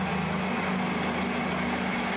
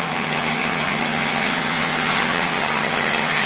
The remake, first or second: second